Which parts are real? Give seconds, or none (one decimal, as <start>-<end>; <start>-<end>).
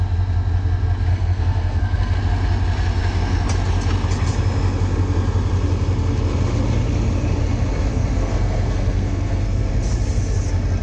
0.0-1.1; 2.2-7.9; 9.7-10.8